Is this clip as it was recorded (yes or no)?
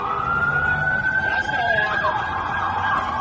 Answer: yes